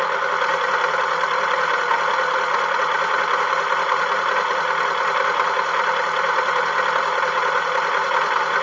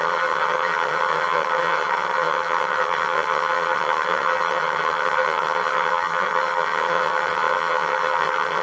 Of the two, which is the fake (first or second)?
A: second